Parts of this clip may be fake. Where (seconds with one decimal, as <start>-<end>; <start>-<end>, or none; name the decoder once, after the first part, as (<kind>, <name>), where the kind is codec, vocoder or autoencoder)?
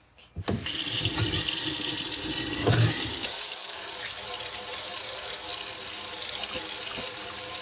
2.6-3.8 (codec, DAC)